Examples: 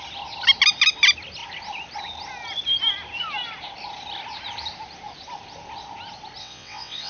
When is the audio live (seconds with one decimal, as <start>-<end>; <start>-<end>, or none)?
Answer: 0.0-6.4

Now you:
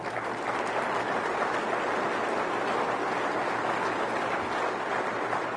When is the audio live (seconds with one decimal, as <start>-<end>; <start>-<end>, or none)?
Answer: 0.0-5.6

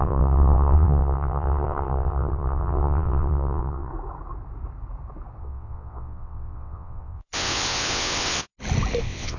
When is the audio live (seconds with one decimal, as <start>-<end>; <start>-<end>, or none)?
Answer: 3.9-5.4; 8.5-9.0

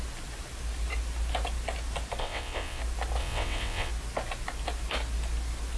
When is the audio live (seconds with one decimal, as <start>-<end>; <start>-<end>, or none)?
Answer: 0.0-2.2; 2.8-3.2; 3.9-5.8

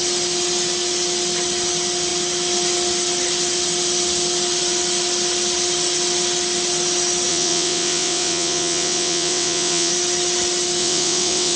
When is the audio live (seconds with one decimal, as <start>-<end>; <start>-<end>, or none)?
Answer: 0.0-7.3; 9.9-10.8